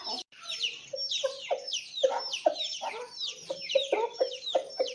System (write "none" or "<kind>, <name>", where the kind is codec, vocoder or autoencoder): none